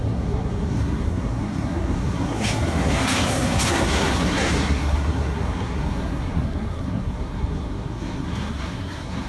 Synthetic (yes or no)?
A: yes